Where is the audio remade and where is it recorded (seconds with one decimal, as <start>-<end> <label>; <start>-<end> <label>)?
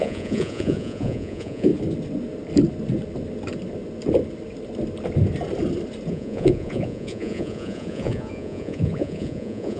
0.0-1.7 remade; 1.7-6.1 recorded; 6.1-9.8 remade